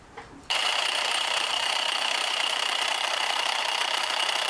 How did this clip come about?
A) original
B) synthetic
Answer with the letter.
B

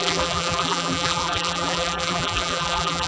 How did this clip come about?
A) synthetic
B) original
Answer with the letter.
A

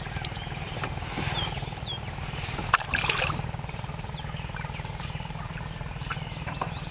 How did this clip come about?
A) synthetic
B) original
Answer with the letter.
A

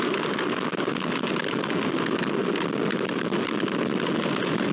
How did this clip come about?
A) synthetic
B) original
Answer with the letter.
B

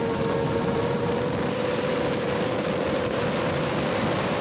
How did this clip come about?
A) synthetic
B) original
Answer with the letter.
A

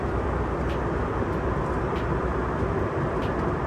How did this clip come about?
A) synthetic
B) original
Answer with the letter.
A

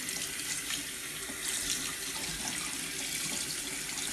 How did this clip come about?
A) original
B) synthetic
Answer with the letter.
B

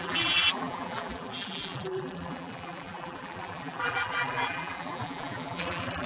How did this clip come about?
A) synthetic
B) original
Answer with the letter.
A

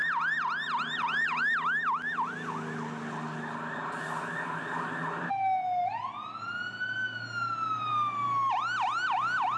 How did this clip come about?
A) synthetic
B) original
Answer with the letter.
B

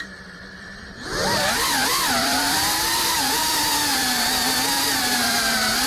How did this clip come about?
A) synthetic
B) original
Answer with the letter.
A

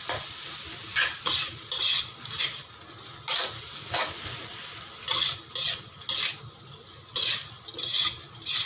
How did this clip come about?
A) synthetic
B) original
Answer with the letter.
A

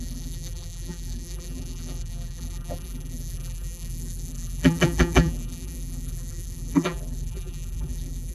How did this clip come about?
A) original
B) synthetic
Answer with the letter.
B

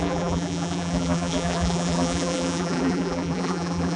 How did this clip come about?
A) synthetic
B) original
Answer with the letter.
A